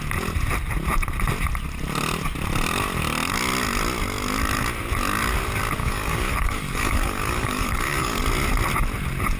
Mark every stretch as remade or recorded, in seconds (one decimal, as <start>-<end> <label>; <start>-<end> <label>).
0.0-5.8 recorded; 5.8-8.2 remade; 8.2-9.4 recorded